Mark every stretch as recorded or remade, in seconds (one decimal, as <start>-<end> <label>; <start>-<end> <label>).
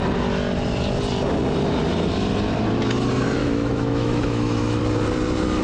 0.0-3.4 recorded; 3.4-4.8 remade; 4.8-5.6 recorded